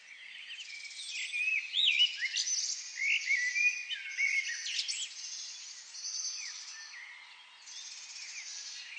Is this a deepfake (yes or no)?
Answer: no